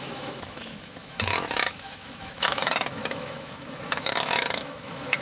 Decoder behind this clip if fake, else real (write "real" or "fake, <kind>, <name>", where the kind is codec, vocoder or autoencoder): fake, autoencoder, DAC-VAE